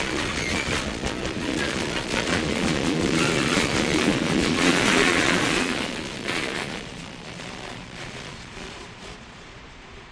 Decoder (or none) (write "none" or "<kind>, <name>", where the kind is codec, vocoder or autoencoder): vocoder, Vocos